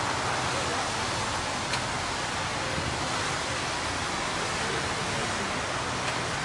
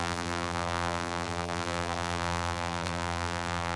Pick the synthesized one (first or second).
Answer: second